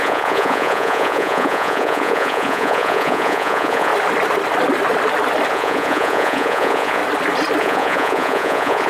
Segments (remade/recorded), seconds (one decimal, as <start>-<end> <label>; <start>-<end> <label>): 0.0-3.9 remade; 3.9-5.5 recorded; 5.5-7.0 remade; 7.0-7.6 recorded; 7.6-8.9 remade